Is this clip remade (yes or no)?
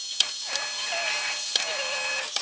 no